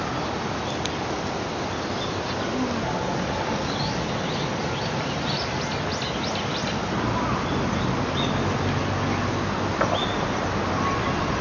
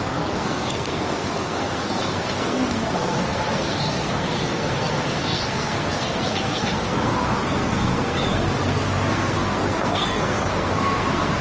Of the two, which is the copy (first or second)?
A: second